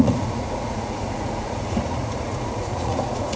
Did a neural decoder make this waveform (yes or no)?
yes